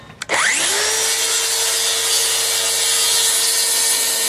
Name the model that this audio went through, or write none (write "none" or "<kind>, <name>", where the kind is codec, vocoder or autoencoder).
none